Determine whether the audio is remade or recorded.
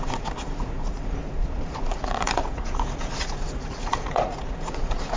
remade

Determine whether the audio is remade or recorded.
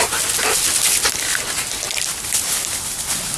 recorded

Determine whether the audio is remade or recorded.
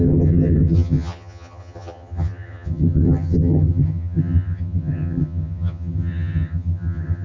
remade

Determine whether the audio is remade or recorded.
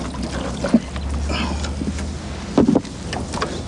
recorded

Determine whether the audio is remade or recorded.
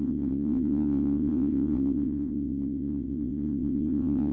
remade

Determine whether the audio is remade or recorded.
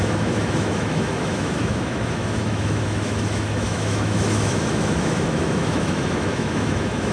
remade